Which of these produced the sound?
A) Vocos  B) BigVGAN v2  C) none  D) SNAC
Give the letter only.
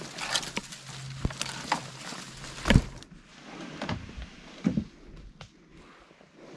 C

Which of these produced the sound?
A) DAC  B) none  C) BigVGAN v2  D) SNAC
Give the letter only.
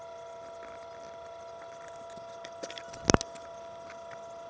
B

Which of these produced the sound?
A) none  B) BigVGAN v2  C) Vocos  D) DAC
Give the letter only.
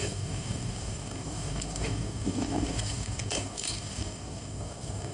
D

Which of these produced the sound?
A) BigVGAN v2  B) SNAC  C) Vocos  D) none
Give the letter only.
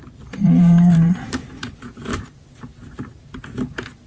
A